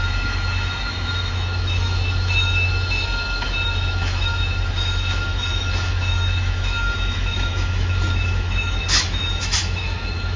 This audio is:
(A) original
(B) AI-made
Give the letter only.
B